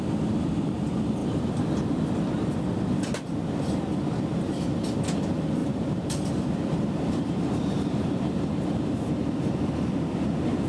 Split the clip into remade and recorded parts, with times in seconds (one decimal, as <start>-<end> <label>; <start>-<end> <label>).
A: 0.0-5.6 recorded; 5.6-8.6 remade; 8.6-10.7 recorded